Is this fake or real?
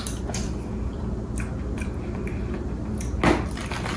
real